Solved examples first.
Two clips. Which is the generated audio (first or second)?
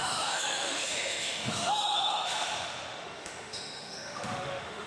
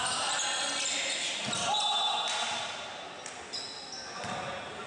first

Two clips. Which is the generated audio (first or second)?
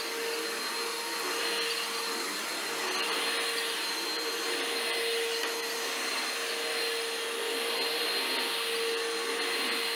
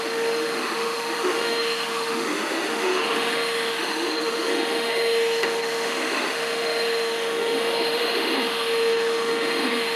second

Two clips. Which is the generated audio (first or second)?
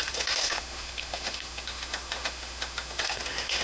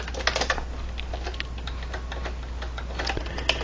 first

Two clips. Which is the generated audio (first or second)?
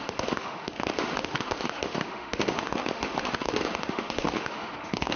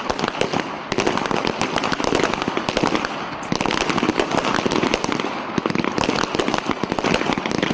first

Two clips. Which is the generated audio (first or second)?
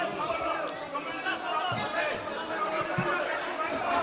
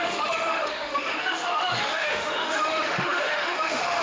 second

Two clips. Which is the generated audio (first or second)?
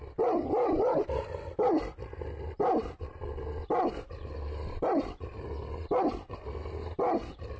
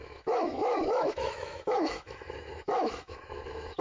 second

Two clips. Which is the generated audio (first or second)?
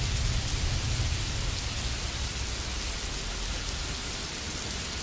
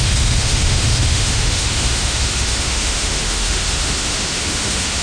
second